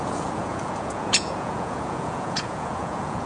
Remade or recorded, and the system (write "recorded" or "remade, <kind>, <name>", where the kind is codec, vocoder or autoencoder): remade, vocoder, Vocos